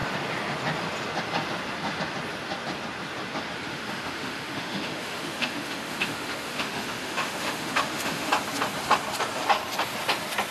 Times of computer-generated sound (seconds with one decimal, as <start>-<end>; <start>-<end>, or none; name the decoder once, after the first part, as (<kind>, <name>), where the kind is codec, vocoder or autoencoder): 3.7-8.3 (autoencoder, DAC-VAE)